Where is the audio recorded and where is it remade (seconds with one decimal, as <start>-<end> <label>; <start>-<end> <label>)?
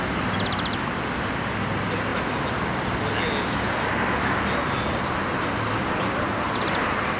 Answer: 0.0-7.2 recorded